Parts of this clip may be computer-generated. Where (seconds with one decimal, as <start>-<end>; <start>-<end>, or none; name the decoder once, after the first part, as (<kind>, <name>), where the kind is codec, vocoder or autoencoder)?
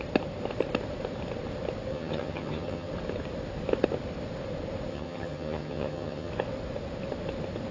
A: 1.9-2.9 (vocoder, HiFi-GAN); 4.9-6.3